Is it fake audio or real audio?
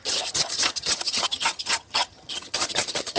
fake